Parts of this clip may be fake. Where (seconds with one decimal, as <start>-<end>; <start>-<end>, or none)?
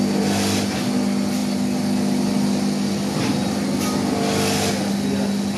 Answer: none